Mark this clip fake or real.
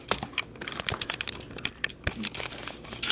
real